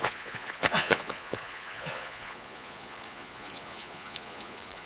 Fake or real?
fake